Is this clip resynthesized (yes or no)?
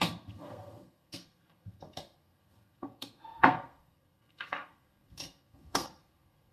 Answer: yes